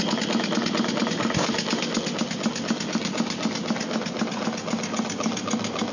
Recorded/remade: recorded